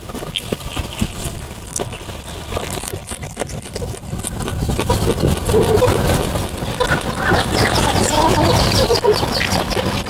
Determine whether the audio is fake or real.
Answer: real